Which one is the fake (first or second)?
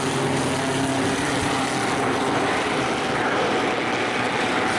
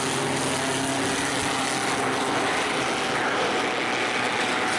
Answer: first